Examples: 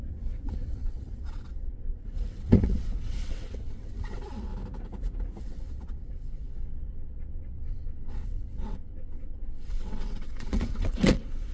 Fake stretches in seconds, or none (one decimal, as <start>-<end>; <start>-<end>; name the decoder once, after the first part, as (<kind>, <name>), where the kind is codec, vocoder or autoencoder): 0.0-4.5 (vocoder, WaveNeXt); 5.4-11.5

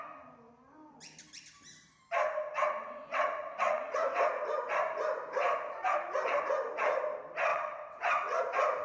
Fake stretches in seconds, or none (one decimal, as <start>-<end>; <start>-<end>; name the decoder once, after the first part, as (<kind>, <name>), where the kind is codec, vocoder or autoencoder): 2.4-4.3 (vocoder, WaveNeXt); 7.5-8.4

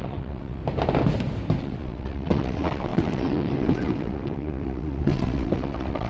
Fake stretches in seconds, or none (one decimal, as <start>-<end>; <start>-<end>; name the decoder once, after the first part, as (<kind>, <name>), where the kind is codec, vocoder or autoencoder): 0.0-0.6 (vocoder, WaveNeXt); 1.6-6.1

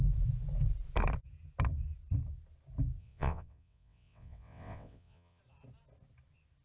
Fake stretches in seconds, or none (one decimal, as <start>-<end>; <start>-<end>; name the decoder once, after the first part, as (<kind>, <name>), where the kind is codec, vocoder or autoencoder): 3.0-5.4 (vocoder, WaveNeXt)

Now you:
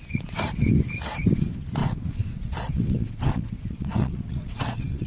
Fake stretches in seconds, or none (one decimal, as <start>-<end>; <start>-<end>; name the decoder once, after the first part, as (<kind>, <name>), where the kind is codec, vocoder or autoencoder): 1.8-5.1 (vocoder, WaveNeXt)

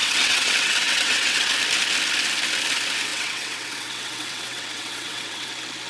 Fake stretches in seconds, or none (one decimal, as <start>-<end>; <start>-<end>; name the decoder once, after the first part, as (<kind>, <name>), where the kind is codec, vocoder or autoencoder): 0.0-1.5 (vocoder, WaveNeXt); 3.1-5.5

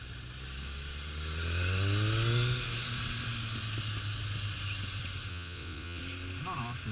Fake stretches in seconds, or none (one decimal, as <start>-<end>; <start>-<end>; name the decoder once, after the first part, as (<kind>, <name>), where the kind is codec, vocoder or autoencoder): 5.3-6.0 (vocoder, WaveNeXt)

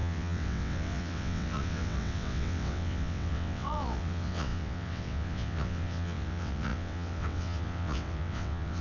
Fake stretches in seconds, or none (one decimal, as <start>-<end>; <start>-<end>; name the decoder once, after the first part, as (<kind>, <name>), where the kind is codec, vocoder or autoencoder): 0.0-8.8 (vocoder, WaveNeXt)